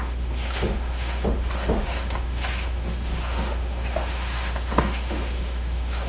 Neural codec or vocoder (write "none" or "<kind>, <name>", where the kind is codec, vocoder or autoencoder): autoencoder, DAC-VAE